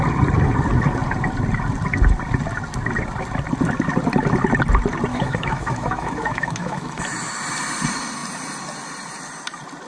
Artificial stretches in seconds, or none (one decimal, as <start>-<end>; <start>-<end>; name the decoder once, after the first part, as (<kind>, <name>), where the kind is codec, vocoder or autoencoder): 5.1-7.0 (autoencoder, DAC-VAE)